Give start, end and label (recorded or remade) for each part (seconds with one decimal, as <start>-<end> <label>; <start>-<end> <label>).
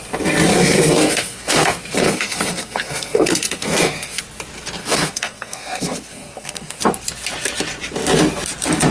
0.0-0.5 recorded; 0.5-4.2 remade; 4.2-4.8 recorded; 4.8-6.8 remade; 6.8-8.9 recorded